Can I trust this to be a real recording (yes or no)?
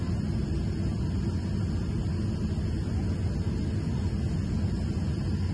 yes